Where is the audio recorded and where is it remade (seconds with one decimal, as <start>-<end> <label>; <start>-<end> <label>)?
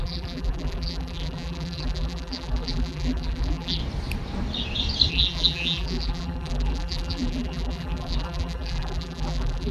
0.0-3.8 remade; 3.8-5.1 recorded; 5.1-9.7 remade